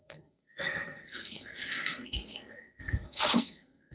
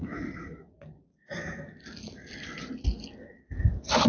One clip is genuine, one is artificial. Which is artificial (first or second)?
first